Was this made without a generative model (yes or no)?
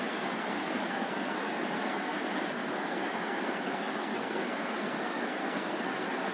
no